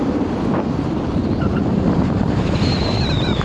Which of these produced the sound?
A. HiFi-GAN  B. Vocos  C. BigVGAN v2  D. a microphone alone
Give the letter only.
C